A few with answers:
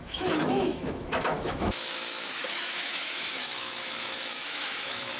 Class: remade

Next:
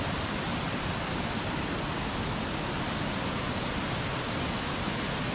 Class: recorded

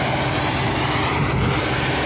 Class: recorded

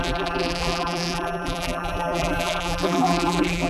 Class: remade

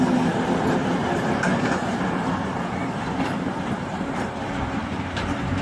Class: remade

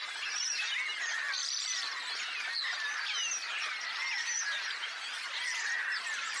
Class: recorded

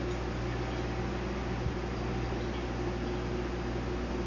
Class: recorded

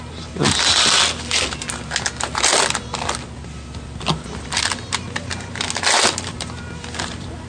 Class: recorded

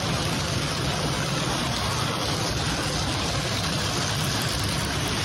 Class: recorded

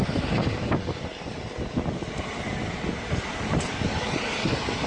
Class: recorded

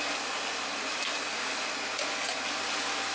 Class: recorded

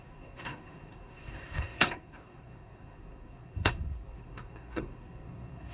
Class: remade